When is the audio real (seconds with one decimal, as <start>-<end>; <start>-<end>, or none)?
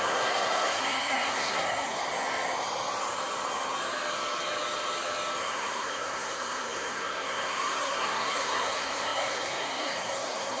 2.0-5.4